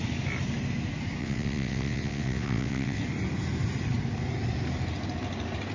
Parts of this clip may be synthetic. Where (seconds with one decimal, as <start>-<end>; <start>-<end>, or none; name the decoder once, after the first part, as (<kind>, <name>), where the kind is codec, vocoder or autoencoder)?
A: 1.2-3.0 (vocoder, WaveNeXt)